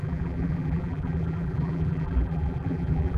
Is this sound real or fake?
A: fake